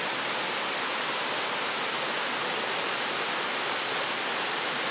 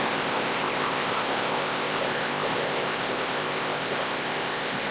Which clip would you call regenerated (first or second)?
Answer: second